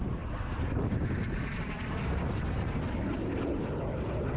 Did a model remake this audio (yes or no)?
no